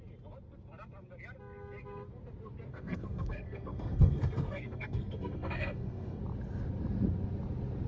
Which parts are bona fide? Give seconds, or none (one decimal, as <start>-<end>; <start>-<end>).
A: 0.0-2.7; 6.2-7.9